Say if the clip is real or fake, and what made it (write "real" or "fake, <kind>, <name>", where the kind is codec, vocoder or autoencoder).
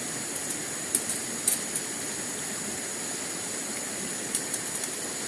real